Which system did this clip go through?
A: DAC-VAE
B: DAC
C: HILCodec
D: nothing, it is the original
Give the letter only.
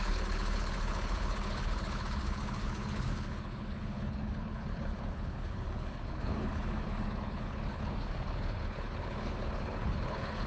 C